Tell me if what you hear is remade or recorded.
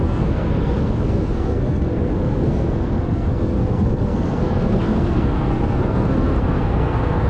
remade